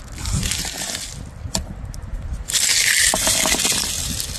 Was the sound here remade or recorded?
recorded